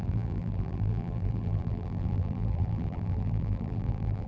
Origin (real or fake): fake